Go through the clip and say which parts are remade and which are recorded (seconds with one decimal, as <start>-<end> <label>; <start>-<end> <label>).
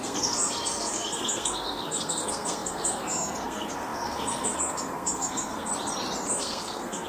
0.0-5.7 remade; 5.7-6.3 recorded; 6.3-7.1 remade